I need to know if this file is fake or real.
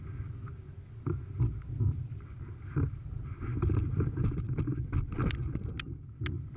real